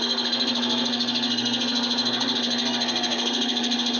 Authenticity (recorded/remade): remade